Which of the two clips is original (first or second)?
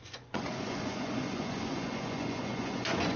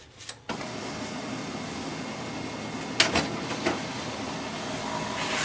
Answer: second